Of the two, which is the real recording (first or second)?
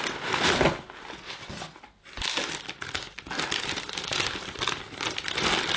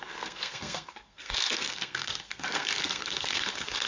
first